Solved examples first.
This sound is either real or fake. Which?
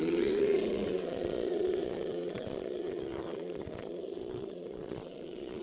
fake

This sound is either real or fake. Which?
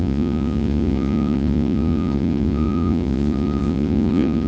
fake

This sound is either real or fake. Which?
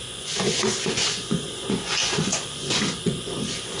fake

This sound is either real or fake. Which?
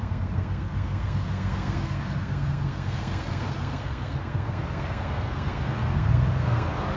fake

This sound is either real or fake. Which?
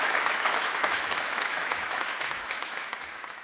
fake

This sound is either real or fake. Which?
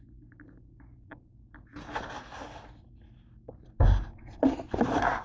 real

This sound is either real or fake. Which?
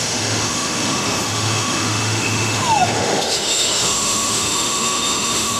fake